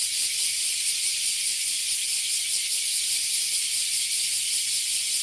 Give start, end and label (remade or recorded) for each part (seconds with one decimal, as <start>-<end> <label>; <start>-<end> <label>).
0.0-5.2 recorded